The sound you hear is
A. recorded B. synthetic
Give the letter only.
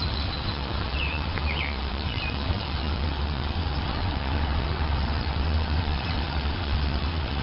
B